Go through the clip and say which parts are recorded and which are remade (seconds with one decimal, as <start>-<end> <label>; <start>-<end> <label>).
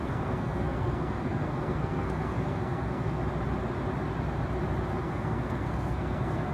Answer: 0.0-3.2 remade; 3.2-5.0 recorded; 5.0-6.5 remade